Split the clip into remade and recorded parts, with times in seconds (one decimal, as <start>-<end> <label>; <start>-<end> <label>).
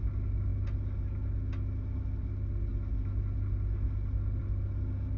0.0-5.2 recorded